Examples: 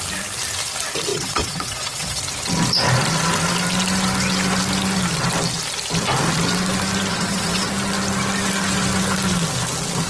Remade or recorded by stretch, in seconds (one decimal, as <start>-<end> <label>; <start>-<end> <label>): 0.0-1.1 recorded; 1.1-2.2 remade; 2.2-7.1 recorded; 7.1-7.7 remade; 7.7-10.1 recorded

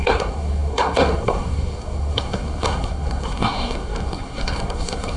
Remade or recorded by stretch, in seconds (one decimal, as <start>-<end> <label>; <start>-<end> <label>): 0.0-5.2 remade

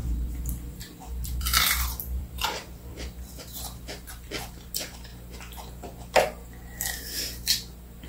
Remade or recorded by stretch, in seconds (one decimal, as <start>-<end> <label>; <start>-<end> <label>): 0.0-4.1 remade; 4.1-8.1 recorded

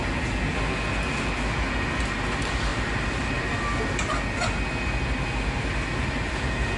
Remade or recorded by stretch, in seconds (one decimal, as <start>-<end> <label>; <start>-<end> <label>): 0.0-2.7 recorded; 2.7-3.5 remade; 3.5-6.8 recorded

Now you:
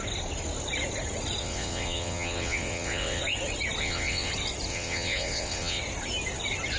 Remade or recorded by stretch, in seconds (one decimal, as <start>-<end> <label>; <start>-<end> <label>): 0.0-1.4 recorded; 1.4-3.2 remade; 3.2-3.8 recorded; 3.8-4.3 remade; 4.3-4.7 recorded; 4.7-5.8 remade; 5.8-6.8 recorded

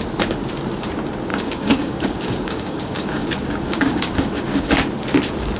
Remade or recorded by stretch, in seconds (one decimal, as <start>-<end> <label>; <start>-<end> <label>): 0.0-1.3 recorded; 1.3-4.7 remade; 4.7-5.6 recorded

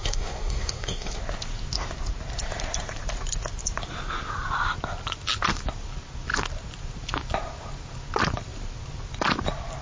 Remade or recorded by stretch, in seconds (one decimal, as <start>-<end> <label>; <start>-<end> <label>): 0.0-1.2 remade; 1.2-9.8 recorded

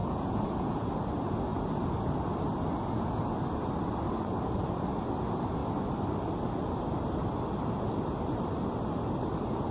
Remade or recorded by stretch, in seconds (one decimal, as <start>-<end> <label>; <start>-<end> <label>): 0.0-0.9 remade; 0.9-9.7 recorded